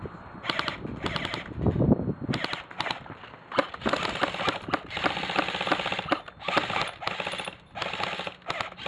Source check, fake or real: real